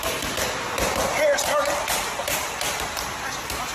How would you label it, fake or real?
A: real